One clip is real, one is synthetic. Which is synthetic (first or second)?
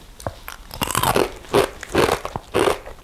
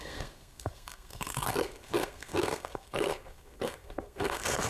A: second